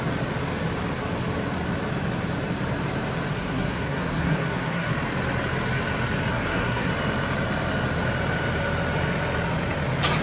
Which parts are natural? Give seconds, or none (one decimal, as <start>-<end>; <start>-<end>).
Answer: 0.0-3.3; 4.9-6.3; 6.9-10.2